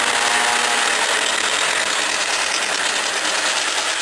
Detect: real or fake real